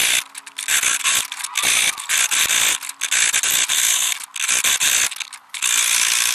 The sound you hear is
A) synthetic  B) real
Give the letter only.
B